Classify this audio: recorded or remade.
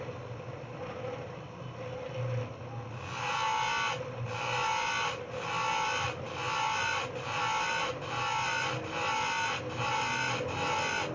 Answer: recorded